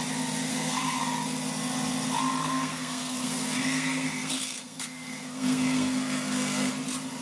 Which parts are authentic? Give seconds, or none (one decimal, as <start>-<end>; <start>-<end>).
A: 0.0-0.5; 1.0-2.4; 6.7-7.2